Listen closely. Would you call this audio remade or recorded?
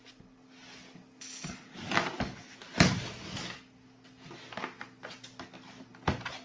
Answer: recorded